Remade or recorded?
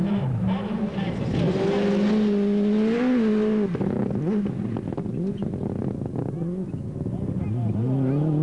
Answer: recorded